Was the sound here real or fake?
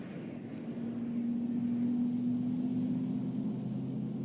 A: real